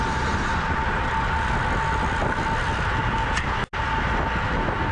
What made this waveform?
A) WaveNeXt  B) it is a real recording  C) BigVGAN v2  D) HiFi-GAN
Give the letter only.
B